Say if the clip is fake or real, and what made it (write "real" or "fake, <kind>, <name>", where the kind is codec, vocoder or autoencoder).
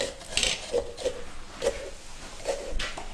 real